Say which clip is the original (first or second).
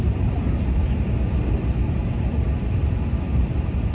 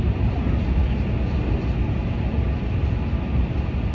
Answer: second